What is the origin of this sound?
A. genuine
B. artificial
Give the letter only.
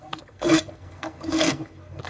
B